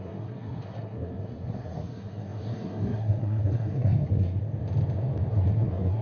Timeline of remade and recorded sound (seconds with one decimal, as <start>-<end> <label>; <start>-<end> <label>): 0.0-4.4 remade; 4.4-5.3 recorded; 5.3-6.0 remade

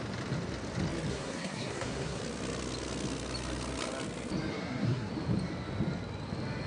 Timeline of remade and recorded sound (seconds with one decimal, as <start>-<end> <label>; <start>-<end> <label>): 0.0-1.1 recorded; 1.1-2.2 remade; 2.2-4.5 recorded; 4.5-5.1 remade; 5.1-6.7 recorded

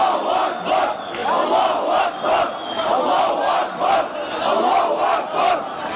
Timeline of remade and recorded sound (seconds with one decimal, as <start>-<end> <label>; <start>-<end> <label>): 0.0-6.0 recorded